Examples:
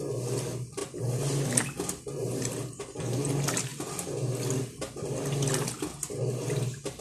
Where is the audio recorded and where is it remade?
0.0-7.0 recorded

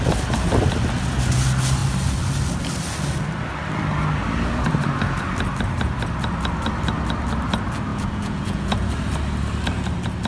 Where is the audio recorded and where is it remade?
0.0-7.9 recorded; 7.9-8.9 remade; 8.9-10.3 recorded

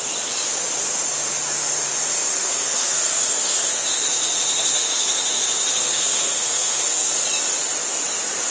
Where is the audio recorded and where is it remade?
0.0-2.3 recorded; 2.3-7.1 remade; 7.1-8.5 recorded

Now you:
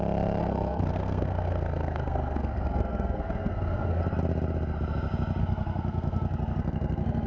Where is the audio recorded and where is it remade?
0.0-0.4 recorded; 0.4-4.0 remade; 4.0-5.4 recorded; 5.4-7.3 remade

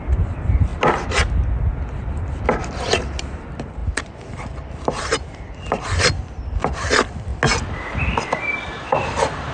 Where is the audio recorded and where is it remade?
0.0-0.7 remade; 0.7-1.5 recorded; 1.5-7.3 remade; 7.3-8.0 recorded; 8.0-9.5 remade

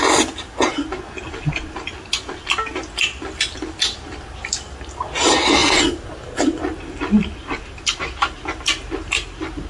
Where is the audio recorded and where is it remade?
0.0-9.7 recorded